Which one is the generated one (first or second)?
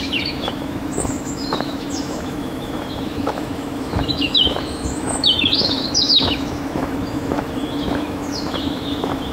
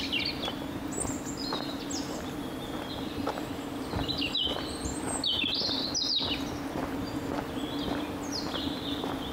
first